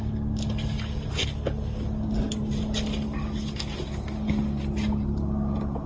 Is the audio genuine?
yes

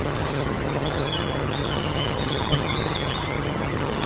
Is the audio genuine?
no